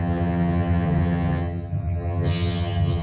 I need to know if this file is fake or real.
fake